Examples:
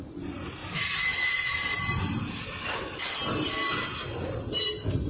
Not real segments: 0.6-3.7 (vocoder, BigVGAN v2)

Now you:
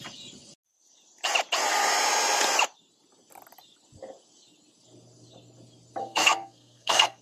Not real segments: 6.0-7.2 (codec, SNAC)